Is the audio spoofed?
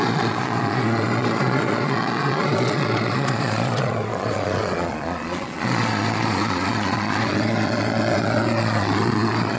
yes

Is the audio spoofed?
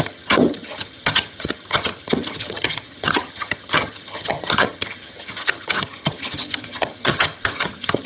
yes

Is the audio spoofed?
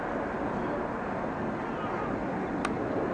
no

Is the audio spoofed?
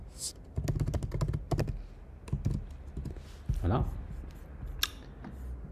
no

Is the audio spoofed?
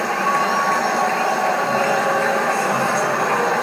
no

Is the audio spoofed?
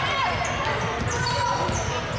no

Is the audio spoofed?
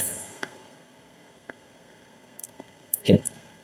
yes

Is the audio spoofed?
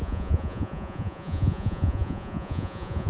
yes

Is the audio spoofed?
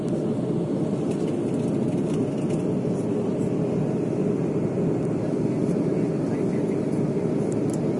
no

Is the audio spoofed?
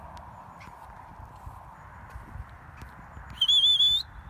no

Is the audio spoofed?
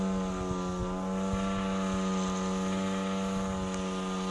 no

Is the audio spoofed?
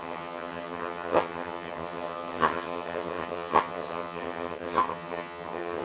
yes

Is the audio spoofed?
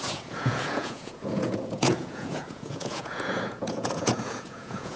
yes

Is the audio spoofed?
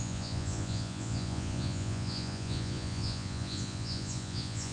yes